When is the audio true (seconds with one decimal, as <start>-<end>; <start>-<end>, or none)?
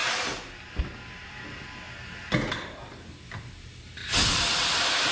0.0-5.1